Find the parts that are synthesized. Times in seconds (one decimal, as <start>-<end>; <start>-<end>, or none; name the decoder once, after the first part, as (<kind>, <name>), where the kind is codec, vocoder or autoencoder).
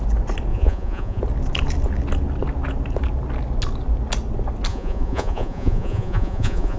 0.5-1.2 (vocoder, Vocos); 4.7-6.8